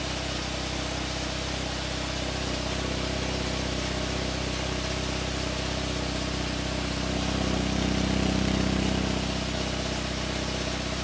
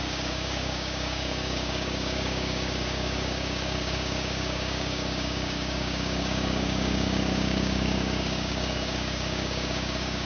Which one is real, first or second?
first